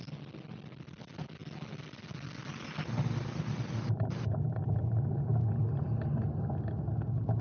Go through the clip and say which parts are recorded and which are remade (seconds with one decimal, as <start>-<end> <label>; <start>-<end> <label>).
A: 0.0-7.4 recorded